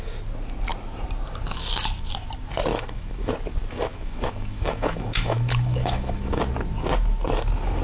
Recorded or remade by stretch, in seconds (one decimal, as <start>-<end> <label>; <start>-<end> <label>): 0.0-2.7 recorded; 2.7-3.3 remade; 3.3-3.9 recorded; 3.9-6.4 remade; 6.4-7.8 recorded